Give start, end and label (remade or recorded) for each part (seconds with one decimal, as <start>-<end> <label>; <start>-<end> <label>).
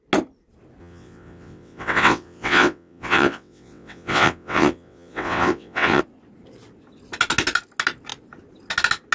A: 0.0-0.8 recorded; 0.8-6.0 remade; 6.0-9.1 recorded